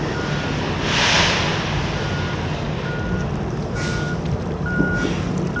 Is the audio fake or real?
real